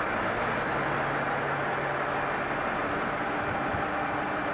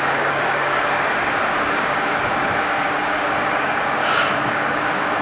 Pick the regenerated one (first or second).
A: second